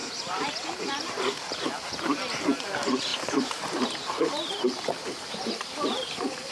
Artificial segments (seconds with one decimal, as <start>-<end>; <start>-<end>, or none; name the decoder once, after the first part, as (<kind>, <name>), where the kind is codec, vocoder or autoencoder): 0.0-0.8 (vocoder, BigVGAN v2); 3.1-6.5